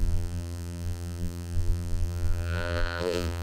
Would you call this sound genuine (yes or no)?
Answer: no